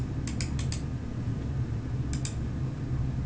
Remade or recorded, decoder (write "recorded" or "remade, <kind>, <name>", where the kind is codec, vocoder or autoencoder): recorded